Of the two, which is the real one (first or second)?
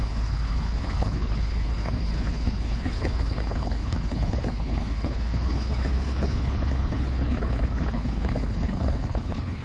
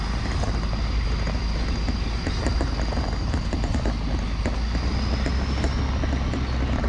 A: second